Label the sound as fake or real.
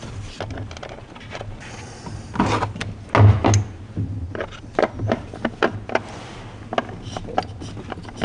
real